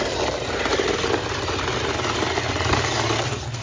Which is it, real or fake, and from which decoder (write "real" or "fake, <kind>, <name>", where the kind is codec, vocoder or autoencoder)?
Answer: real